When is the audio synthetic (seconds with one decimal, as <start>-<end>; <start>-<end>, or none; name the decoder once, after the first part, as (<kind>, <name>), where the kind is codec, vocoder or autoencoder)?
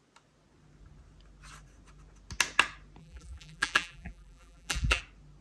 3.0-5.0 (vocoder, BigVGAN v2)